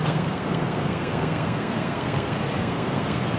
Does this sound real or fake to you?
fake